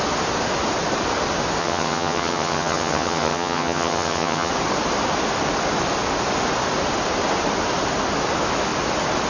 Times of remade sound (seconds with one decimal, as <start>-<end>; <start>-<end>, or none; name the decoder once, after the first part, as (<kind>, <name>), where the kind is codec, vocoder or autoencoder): 1.6-4.5 (vocoder, HiFi-GAN)